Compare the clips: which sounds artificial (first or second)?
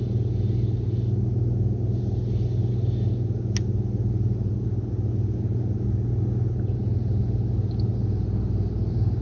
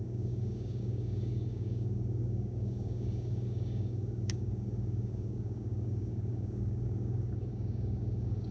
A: second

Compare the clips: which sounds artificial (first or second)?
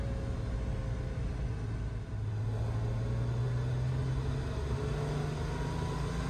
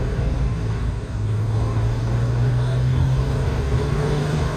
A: second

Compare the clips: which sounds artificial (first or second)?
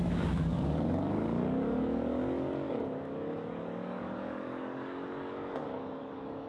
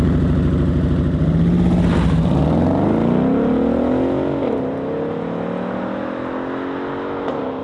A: first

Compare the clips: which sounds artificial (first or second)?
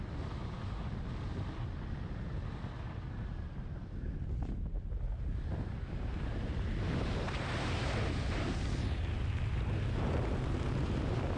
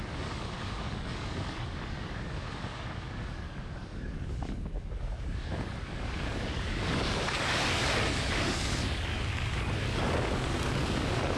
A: second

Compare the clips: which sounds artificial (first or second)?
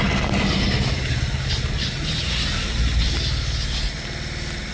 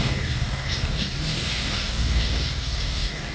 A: second